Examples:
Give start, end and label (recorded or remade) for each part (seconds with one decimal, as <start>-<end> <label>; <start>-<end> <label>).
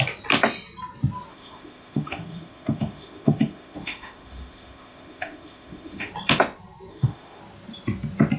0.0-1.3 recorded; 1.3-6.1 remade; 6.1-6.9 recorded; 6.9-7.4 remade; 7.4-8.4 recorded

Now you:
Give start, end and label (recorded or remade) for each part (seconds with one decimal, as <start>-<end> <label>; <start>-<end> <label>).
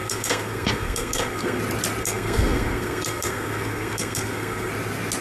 0.0-1.6 remade; 1.6-2.0 recorded; 2.0-4.7 remade; 4.7-5.2 recorded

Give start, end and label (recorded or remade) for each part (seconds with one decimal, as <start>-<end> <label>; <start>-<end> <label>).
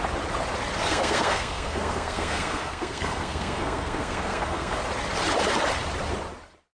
0.0-0.8 recorded; 0.8-4.8 remade; 4.8-6.7 recorded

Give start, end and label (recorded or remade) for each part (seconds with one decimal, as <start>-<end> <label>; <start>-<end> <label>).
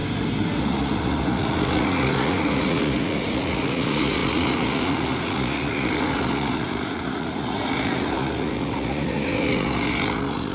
0.0-0.6 recorded; 0.6-10.5 remade